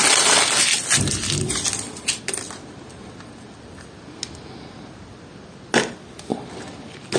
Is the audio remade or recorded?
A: recorded